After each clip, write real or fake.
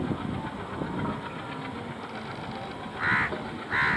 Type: real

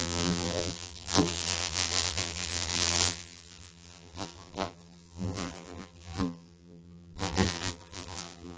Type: fake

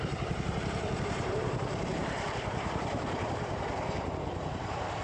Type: fake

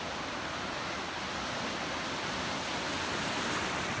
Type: real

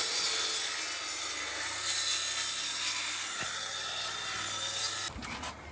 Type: real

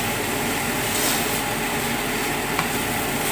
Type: real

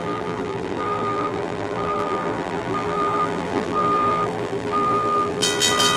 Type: fake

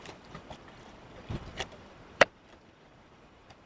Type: fake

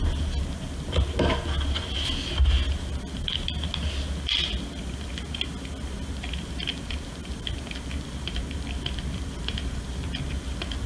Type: real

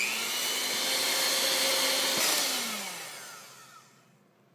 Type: real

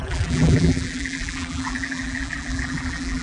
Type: fake